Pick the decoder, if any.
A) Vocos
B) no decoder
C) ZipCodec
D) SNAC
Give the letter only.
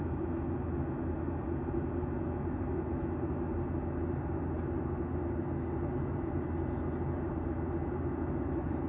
B